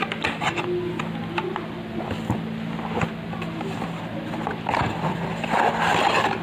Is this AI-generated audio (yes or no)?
no